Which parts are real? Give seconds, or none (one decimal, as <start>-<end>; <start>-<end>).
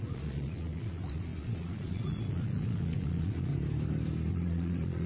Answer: 3.5-4.3